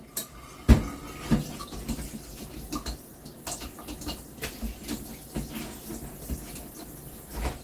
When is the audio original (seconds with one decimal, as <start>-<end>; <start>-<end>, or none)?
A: 0.0-7.6